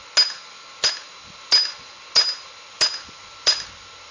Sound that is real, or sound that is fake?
real